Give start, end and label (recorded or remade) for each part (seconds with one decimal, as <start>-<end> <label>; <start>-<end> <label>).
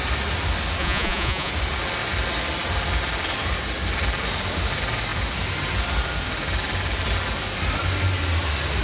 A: 0.0-0.8 recorded; 0.8-1.5 remade; 1.5-8.8 recorded